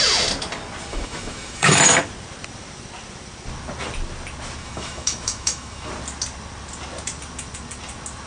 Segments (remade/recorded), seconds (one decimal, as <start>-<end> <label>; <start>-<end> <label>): 0.0-0.9 recorded; 0.9-1.8 remade; 1.8-4.6 recorded; 4.6-5.9 remade; 5.9-8.3 recorded